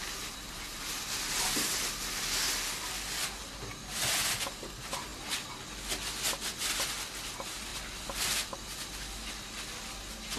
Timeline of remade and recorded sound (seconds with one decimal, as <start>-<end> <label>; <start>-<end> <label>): 0.0-10.4 recorded